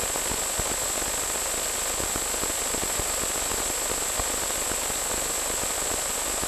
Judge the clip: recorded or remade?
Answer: recorded